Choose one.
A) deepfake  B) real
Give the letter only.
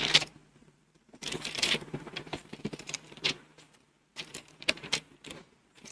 A